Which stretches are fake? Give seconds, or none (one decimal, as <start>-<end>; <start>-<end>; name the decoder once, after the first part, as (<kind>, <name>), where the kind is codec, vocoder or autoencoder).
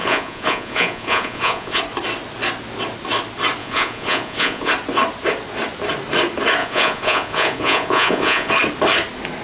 0.0-1.8 (vocoder, Vocos); 3.6-4.7; 6.6-8.5